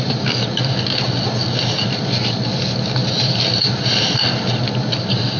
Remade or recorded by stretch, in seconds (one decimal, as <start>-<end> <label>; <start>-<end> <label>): 0.0-5.4 recorded